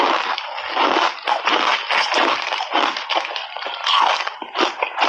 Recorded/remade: recorded